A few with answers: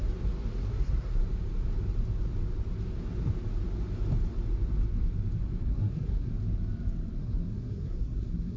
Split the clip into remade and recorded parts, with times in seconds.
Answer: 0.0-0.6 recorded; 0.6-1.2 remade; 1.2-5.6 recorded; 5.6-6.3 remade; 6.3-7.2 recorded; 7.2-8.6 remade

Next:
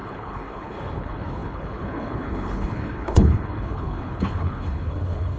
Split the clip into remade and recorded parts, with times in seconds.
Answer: 0.0-5.4 remade

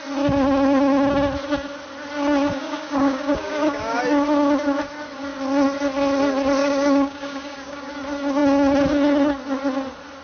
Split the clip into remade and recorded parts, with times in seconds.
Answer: 0.0-2.5 recorded; 2.5-4.0 remade; 4.0-6.6 recorded; 6.6-7.9 remade; 7.9-10.2 recorded

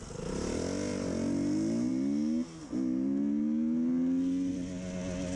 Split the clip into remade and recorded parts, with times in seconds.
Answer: 0.0-5.4 recorded

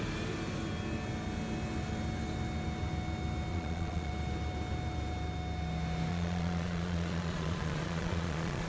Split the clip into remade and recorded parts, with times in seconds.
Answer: 0.0-3.5 recorded; 3.5-4.1 remade; 4.1-6.1 recorded; 6.1-8.7 remade

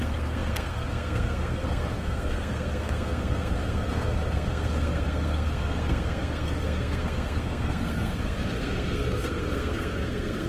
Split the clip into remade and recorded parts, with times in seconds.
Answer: 0.0-10.5 remade

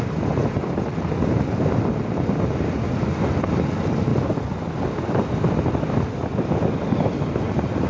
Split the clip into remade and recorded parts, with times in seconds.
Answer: 0.0-7.9 recorded

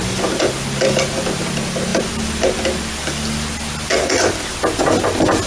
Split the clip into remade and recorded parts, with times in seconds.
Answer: 0.0-5.5 recorded